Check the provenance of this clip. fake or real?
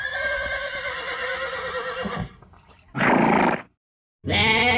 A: real